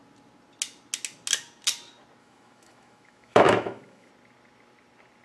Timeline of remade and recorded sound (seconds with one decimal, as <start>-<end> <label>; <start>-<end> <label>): 0.0-2.2 recorded; 2.2-4.1 remade; 4.1-5.2 recorded